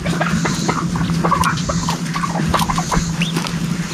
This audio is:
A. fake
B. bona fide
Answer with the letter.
B